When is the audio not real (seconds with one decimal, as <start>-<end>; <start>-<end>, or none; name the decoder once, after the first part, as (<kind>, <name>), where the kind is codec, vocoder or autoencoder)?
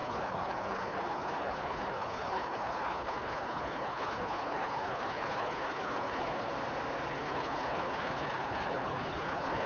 0.0-6.5 (codec, HILCodec); 7.1-9.7